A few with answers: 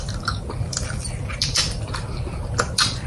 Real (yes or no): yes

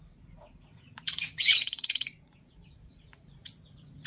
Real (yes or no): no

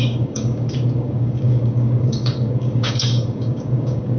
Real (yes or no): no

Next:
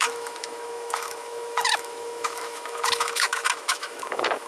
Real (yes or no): no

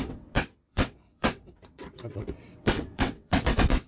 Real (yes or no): no